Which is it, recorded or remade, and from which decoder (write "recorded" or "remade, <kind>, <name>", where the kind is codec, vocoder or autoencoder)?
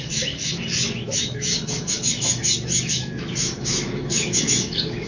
remade, autoencoder, DAC-VAE